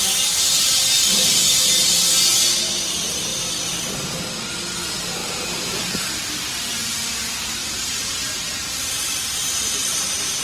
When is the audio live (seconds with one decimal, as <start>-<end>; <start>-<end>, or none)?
0.0-7.6

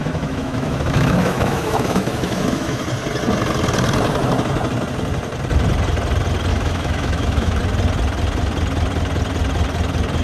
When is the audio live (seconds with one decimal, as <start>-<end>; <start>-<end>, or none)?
2.8-6.5; 7.6-10.2

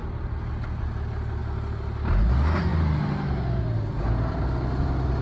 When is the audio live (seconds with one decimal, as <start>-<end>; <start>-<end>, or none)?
0.5-1.4; 2.2-5.2

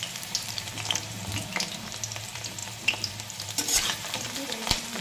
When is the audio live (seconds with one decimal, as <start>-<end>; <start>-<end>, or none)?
1.3-1.9